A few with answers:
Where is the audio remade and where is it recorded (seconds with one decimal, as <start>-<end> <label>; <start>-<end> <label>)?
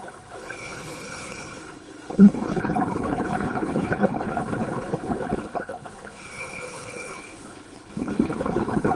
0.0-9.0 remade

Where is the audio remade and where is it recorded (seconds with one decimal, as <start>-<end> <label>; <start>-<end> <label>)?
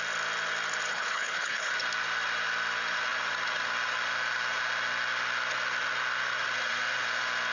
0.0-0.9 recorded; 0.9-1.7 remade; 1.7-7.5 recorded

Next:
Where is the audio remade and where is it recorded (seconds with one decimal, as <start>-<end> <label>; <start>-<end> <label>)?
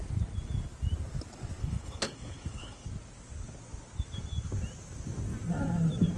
0.0-1.6 recorded; 1.6-2.9 remade; 2.9-6.2 recorded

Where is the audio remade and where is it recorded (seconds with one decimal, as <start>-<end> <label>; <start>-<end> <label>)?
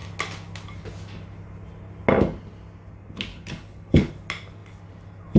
0.0-3.3 recorded; 3.3-4.1 remade; 4.1-5.4 recorded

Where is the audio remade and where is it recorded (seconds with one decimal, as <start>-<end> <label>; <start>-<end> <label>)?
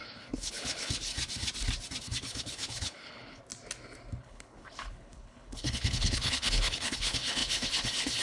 0.0-1.1 remade; 1.1-2.0 recorded; 2.0-3.4 remade; 3.4-4.2 recorded; 4.2-8.2 remade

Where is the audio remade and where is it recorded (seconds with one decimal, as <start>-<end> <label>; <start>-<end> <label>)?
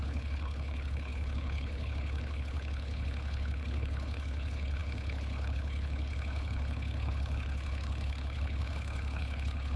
0.0-9.8 remade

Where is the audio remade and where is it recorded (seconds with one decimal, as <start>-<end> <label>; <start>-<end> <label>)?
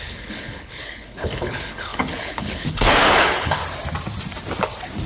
0.0-3.6 remade; 3.6-5.1 recorded